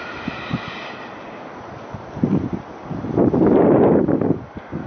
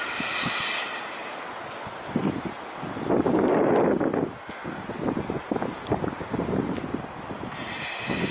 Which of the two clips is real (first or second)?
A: second